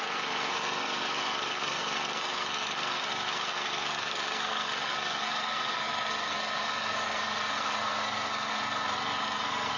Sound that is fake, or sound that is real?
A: fake